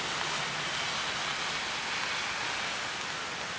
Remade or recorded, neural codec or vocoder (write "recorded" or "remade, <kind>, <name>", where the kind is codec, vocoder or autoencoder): recorded